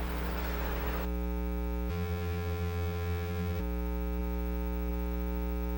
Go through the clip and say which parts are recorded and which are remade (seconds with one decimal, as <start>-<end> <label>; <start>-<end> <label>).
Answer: 0.0-1.9 recorded; 1.9-3.6 remade; 3.6-5.8 recorded